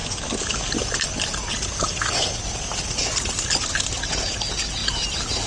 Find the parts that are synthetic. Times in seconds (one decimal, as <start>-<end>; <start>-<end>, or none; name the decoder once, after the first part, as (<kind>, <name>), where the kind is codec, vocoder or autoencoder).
none